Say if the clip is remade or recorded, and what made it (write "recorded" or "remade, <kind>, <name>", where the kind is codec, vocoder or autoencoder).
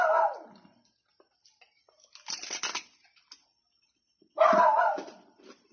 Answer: recorded